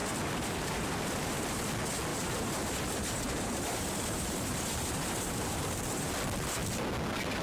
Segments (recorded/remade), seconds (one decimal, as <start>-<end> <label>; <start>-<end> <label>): 0.0-1.7 remade; 1.7-2.1 recorded; 2.1-6.1 remade; 6.1-7.4 recorded